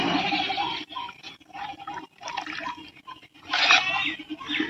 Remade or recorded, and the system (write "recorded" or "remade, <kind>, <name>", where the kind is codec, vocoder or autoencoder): recorded